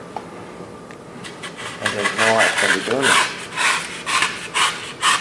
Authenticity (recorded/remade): remade